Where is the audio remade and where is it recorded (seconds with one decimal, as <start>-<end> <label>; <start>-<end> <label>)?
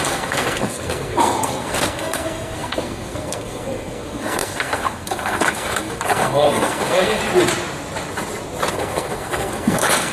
0.0-7.2 remade; 7.2-8.7 recorded; 8.7-10.1 remade